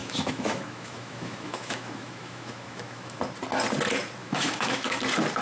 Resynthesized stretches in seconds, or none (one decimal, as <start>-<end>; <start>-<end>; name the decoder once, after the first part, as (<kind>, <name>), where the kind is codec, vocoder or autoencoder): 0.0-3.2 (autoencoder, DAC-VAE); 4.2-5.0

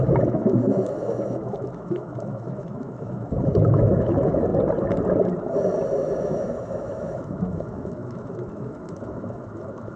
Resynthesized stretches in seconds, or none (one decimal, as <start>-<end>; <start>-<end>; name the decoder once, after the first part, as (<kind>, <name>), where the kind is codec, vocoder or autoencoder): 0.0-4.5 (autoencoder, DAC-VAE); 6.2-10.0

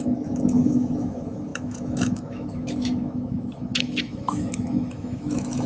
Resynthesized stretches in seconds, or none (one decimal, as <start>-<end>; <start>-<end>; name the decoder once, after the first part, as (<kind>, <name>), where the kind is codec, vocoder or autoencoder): 0.0-5.7 (autoencoder, DAC-VAE)